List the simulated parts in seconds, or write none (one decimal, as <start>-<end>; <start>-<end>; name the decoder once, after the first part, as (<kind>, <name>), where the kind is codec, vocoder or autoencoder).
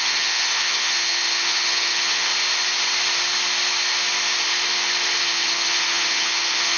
0.0-2.3 (vocoder, HiFi-GAN); 5.2-6.8